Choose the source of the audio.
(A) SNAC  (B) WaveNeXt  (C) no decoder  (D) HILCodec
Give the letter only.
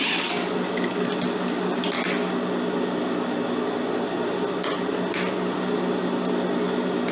C